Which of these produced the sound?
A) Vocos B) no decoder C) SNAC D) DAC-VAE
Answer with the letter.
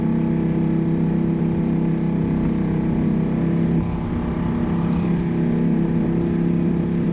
B